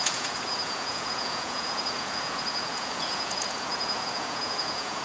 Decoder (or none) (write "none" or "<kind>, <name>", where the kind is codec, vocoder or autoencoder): vocoder, Vocos